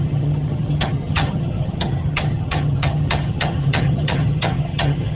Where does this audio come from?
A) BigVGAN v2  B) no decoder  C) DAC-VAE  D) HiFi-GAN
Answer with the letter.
D